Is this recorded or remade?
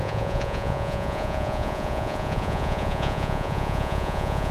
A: remade